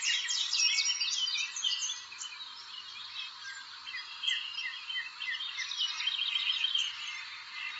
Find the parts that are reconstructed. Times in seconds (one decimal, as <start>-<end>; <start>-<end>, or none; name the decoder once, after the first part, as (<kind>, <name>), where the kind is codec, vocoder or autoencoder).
4.5-5.4 (vocoder, BigVGAN v2)